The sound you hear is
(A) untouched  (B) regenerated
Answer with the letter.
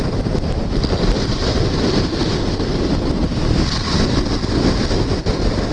A